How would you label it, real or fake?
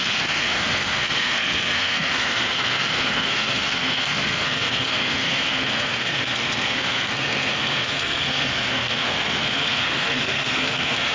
fake